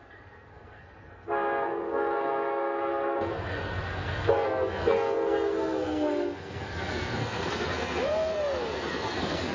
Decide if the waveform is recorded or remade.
remade